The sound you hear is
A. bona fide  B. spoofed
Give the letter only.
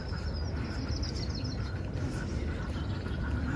A